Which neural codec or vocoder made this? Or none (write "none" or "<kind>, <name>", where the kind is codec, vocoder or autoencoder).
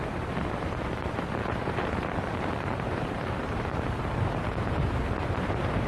vocoder, BigVGAN v2